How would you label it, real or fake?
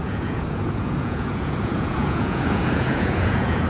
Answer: fake